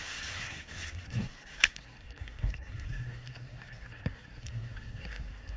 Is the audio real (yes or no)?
no